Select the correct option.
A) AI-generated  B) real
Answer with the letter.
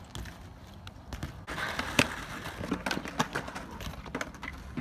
B